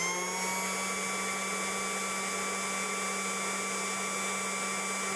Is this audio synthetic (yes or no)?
no